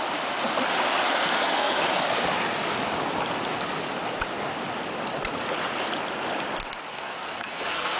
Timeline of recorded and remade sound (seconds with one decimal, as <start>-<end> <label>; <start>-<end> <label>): 0.0-1.3 recorded; 1.3-1.8 remade; 1.8-6.9 recorded; 6.9-8.0 remade